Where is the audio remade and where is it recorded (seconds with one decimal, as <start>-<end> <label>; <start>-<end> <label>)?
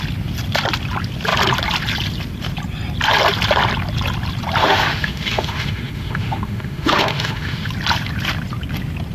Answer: 0.0-4.6 recorded; 4.6-7.7 remade; 7.7-9.1 recorded